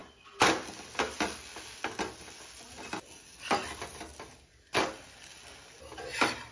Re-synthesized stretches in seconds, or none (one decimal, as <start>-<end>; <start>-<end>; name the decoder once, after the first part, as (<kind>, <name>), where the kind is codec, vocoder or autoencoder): none

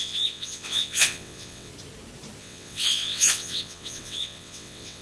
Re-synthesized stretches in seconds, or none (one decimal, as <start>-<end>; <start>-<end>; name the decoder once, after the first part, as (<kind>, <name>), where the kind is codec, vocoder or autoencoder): 0.0-1.7 (vocoder, WaveNeXt); 2.4-5.0

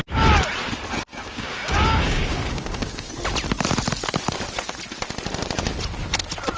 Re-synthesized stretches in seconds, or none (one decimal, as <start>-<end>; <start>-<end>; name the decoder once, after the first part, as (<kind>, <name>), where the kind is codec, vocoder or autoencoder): 1.1-3.1 (codec, DAC)

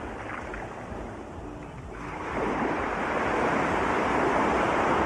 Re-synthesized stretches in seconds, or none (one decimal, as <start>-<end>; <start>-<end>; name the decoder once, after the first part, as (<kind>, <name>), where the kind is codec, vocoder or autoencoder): none

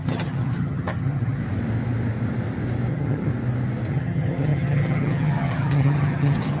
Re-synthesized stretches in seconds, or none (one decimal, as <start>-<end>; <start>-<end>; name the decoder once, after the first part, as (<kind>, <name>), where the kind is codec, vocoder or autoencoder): 0.0-1.4 (vocoder, HiFi-GAN); 2.9-3.3; 3.9-6.6